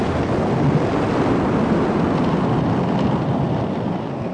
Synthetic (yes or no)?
no